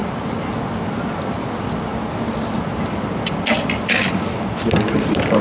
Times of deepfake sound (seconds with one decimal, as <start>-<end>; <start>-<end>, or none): none